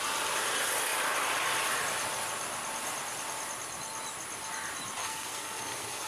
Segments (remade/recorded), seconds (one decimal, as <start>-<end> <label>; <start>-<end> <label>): 0.0-5.0 recorded; 5.0-6.1 remade